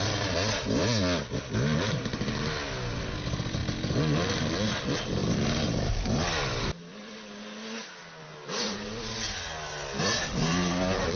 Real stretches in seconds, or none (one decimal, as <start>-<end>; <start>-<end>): 0.0-11.2